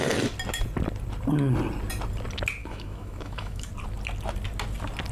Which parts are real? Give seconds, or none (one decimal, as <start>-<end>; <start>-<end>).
0.0-2.6; 3.7-5.1